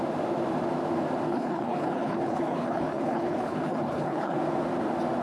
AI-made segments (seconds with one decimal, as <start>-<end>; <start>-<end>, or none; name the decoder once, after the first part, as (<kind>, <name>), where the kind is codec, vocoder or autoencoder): 1.3-4.4 (codec, HILCodec)